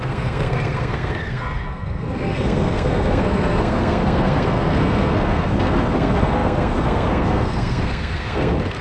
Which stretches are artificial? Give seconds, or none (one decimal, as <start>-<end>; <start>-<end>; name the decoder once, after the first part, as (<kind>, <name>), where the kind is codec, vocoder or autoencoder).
0.0-8.8 (codec, SNAC)

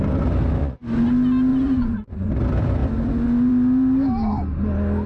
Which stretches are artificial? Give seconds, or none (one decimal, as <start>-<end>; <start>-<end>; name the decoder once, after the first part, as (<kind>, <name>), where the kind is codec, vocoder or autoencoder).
0.6-1.1 (vocoder, Vocos); 1.5-2.3

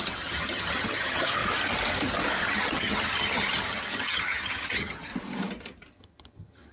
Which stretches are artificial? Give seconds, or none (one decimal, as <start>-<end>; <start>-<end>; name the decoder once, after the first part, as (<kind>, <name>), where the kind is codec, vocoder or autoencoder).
0.0-1.4 (vocoder, HiFi-GAN); 2.4-5.1; 5.9-6.7

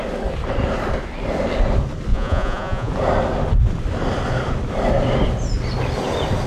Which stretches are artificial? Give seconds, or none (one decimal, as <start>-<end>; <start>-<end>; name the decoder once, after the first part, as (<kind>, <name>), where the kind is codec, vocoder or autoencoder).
2.1-2.9 (vocoder, Vocos)

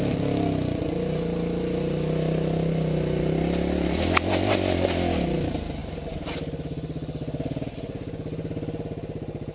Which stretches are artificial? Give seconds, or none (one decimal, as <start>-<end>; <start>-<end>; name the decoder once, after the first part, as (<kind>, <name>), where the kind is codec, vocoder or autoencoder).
none

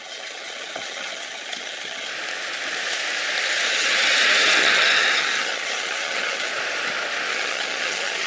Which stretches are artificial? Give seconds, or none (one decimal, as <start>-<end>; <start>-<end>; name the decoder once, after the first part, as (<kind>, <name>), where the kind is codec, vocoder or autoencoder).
0.0-2.1 (vocoder, HiFi-GAN); 3.7-6.5; 7.3-8.3

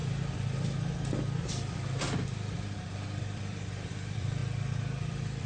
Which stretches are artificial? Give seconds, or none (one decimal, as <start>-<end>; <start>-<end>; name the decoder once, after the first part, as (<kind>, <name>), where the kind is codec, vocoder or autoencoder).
3.2-4.4 (vocoder, BigVGAN v2); 5.0-5.5

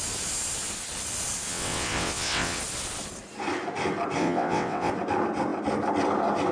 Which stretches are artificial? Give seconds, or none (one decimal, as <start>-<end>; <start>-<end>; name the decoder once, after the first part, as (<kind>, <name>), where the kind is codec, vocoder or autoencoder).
1.5-2.6 (vocoder, WaveNeXt); 4.2-4.9